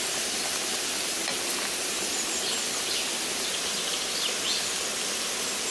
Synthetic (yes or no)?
no